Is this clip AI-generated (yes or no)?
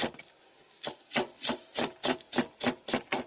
no